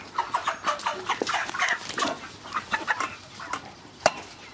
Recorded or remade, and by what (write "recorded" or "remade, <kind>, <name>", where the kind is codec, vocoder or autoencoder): remade, vocoder, BigVGAN v2